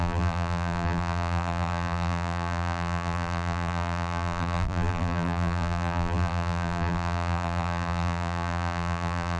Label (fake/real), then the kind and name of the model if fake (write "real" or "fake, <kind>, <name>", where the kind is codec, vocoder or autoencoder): fake, vocoder, BigVGAN v2